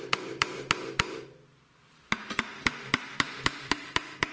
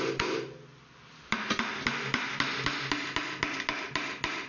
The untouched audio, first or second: second